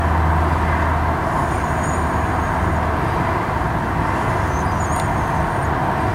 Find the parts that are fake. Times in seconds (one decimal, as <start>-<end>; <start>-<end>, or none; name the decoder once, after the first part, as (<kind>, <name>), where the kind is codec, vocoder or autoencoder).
none